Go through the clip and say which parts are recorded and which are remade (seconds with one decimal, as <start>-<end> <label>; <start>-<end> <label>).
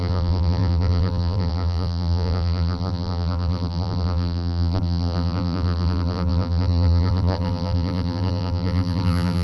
0.0-9.4 remade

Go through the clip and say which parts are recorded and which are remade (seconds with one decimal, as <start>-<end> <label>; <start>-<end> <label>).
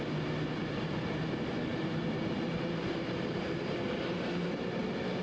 0.0-0.6 recorded; 0.6-1.2 remade; 1.2-1.7 recorded; 1.7-4.8 remade; 4.8-5.2 recorded